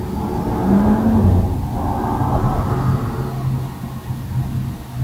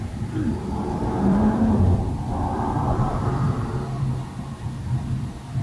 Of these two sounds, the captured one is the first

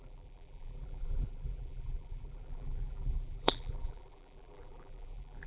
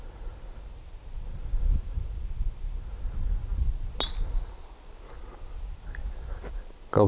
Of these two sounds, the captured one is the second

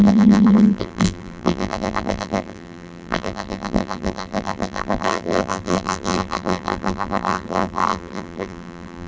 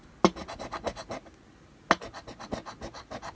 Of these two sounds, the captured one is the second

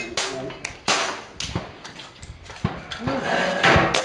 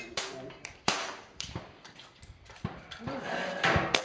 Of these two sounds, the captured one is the first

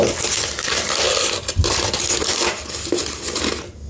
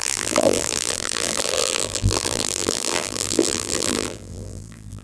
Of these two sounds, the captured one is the first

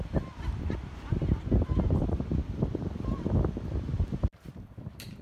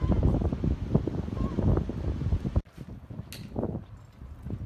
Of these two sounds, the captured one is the second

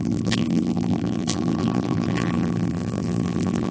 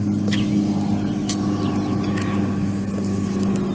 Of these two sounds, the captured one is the second